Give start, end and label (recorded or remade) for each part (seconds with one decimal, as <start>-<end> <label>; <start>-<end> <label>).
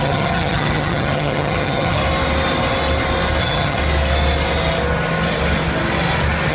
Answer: 0.0-2.0 remade; 2.0-3.4 recorded; 3.4-3.8 remade; 3.8-6.5 recorded